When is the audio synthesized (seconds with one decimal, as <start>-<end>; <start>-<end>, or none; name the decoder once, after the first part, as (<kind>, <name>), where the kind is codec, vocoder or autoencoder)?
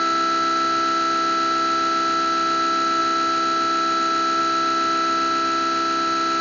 none